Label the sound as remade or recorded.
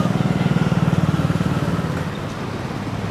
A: recorded